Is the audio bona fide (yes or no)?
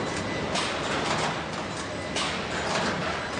yes